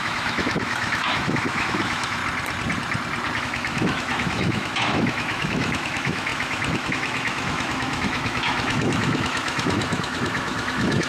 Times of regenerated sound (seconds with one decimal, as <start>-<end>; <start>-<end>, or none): 0.0-2.2; 3.4-11.1